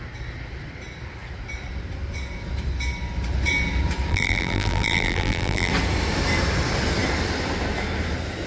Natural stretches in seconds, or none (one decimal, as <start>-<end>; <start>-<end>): 0.0-4.1; 5.7-8.5